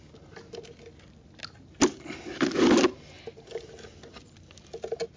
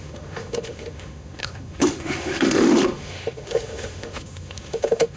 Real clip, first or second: first